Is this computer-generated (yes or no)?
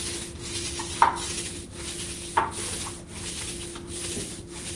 no